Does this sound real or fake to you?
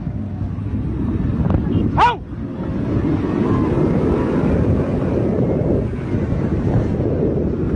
real